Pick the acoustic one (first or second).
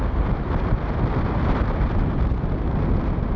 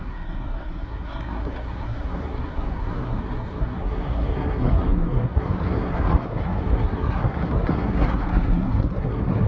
first